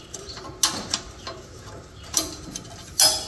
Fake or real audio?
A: real